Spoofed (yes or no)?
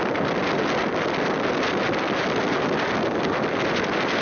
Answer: no